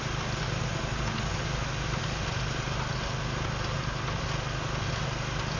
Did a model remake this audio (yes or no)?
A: no